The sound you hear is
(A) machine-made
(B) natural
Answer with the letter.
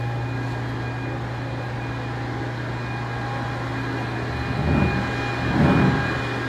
B